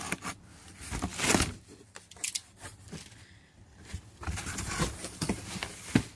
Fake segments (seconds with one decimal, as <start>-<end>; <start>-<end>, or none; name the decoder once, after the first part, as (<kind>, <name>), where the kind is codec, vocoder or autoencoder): none